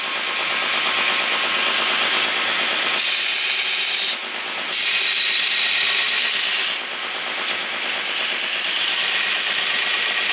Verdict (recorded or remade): recorded